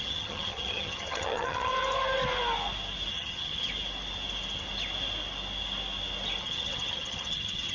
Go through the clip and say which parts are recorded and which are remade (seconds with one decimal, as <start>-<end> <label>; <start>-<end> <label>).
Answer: 0.0-1.7 remade; 1.7-3.1 recorded; 3.1-3.7 remade; 3.7-6.4 recorded; 6.4-7.7 remade